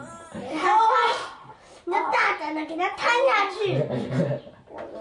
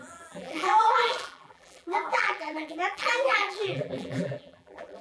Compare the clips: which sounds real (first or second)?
first